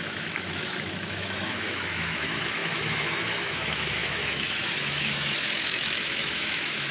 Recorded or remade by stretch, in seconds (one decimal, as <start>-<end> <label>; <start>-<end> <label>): 0.0-6.9 remade